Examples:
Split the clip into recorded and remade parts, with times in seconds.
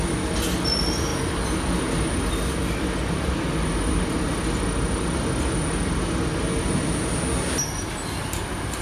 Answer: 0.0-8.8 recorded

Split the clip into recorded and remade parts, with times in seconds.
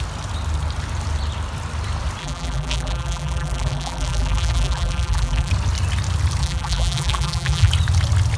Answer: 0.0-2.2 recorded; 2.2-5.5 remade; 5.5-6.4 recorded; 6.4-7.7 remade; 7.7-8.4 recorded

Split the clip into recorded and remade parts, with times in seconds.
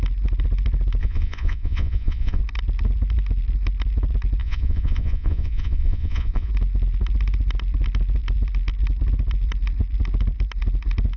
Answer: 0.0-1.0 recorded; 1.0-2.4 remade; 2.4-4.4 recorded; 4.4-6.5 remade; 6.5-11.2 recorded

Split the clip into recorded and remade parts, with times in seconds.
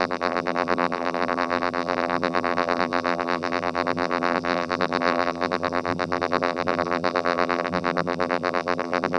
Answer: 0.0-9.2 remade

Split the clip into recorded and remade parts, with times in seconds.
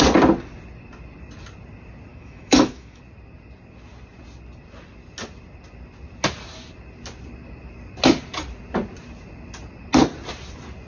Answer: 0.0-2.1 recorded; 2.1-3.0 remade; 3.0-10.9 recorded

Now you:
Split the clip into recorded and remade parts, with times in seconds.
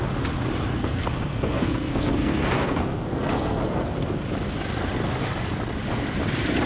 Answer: 0.0-0.7 recorded; 0.7-4.2 remade; 4.2-6.7 recorded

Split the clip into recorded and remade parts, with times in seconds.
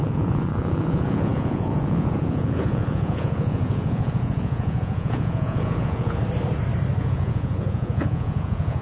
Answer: 0.0-6.2 remade; 6.2-7.0 recorded; 7.0-8.8 remade